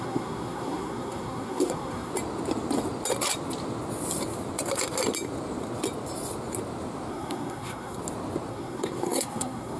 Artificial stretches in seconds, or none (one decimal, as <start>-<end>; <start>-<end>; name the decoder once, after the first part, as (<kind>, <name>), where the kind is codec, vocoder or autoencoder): 0.0-2.1 (codec, SNAC); 7.1-8.0; 8.5-9.8